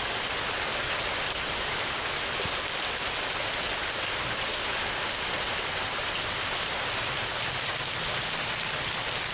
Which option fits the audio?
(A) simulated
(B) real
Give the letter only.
B